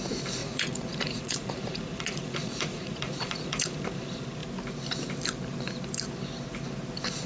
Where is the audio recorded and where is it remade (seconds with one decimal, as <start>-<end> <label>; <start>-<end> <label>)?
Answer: 0.0-0.4 recorded; 0.4-3.8 remade; 3.8-7.3 recorded